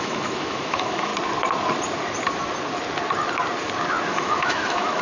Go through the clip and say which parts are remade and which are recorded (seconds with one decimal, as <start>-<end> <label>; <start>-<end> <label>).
0.0-1.1 remade; 1.1-4.1 recorded; 4.1-5.0 remade